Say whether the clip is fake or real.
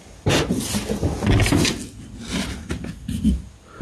real